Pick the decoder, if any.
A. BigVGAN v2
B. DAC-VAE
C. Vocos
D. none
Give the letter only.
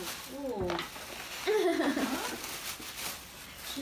D